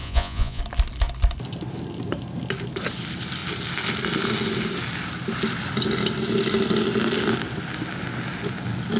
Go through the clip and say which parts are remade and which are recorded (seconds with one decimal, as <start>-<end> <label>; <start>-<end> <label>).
0.0-0.6 remade; 0.6-9.0 recorded